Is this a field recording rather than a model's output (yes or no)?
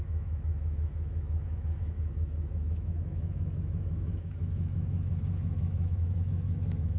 no